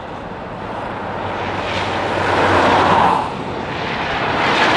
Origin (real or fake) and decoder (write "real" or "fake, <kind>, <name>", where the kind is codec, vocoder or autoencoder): real